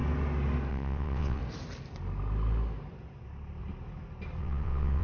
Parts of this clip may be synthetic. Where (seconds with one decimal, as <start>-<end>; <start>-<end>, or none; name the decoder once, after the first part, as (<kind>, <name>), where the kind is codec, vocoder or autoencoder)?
0.7-1.4 (vocoder, WaveNeXt); 4.4-5.0